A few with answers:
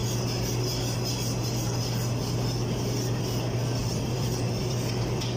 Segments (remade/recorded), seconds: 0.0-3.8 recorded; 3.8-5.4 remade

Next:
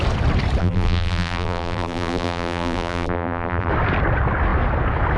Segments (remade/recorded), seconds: 0.0-0.6 recorded; 0.6-3.7 remade; 3.7-5.2 recorded

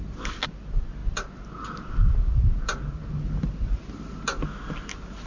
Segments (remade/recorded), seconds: 0.0-5.3 recorded

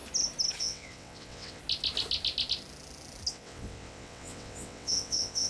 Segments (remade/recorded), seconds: 0.0-0.6 recorded; 0.6-1.6 remade; 1.6-3.3 recorded; 3.3-5.5 remade

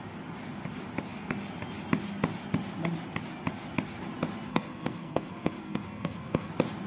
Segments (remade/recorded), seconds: 0.0-4.5 recorded; 4.5-6.5 remade; 6.5-6.9 recorded

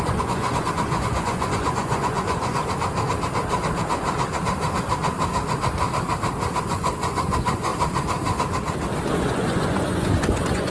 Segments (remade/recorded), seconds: 0.0-2.6 remade; 2.6-6.6 recorded; 6.6-7.7 remade; 7.7-9.1 recorded; 9.1-10.7 remade

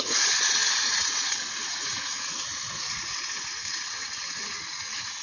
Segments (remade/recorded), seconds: 0.0-5.2 remade